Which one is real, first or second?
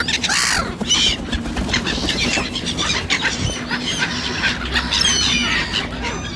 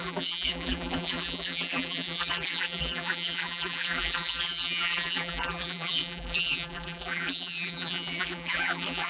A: first